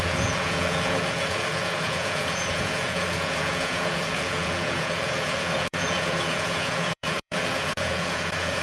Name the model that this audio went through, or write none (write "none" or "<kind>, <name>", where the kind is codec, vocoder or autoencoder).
vocoder, Vocos